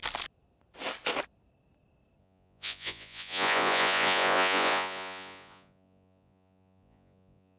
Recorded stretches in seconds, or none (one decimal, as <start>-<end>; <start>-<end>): 0.0-2.2